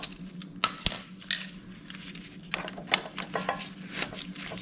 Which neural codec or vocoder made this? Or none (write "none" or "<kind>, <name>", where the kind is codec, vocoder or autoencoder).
none